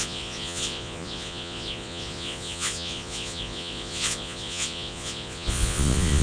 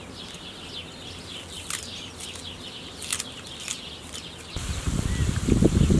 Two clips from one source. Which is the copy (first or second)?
first